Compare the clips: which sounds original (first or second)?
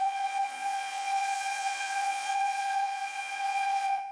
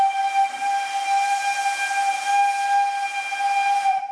second